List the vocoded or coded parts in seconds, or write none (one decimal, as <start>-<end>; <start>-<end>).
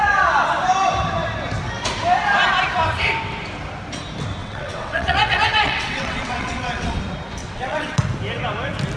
4.4-7.0; 7.4-8.0